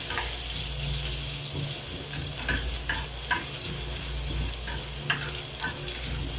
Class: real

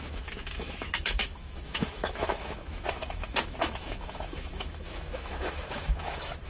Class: fake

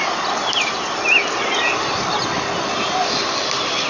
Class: real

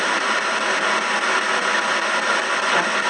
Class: real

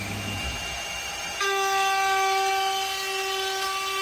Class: real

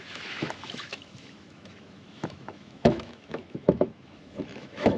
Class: fake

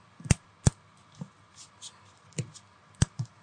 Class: real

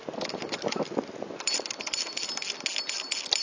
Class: real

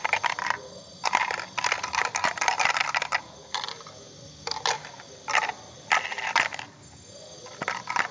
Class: real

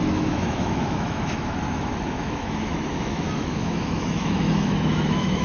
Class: fake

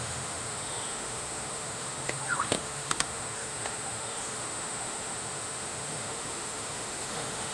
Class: fake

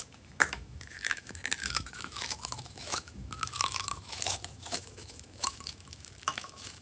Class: fake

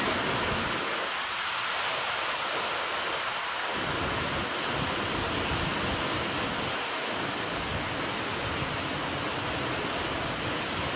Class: real